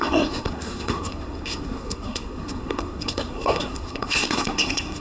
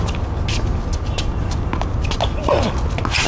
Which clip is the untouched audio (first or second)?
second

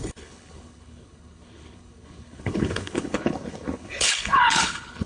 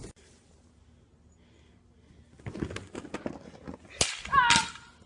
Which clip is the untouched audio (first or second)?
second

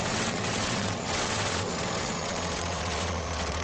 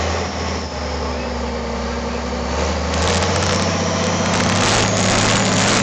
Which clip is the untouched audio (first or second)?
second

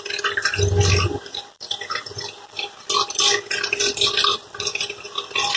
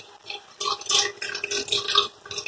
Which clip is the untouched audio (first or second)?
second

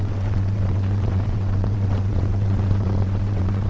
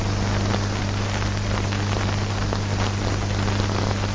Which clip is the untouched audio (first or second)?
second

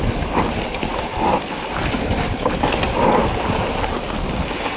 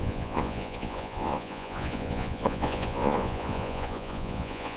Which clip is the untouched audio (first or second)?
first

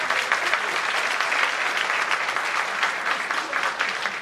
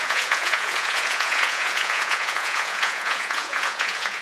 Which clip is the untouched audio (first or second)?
first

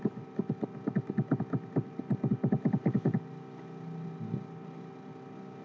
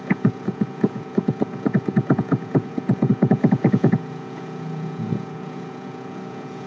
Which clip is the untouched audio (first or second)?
first